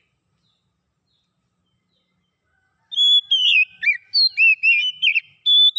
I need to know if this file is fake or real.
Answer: real